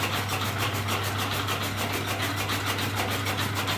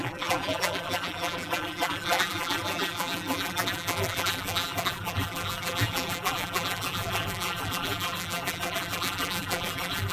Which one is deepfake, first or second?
second